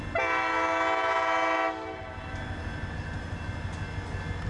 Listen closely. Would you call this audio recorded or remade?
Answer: recorded